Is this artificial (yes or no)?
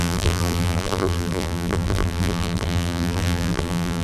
yes